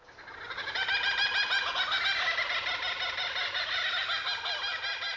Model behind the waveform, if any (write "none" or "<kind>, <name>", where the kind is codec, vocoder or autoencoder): none